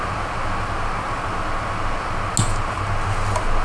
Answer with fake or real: real